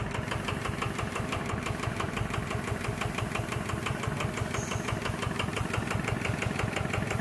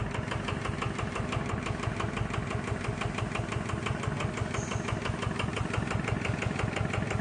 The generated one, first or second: first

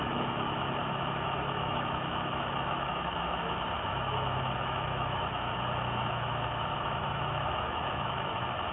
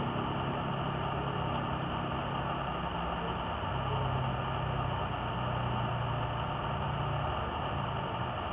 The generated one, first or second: first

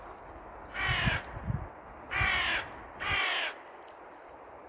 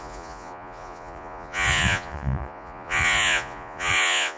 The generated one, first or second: second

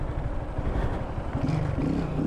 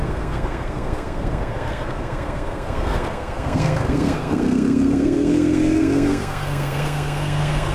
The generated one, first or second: second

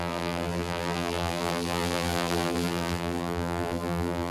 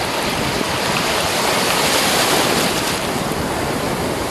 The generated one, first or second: first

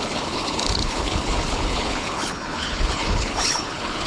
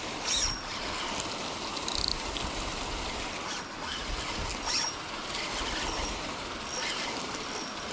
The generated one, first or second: first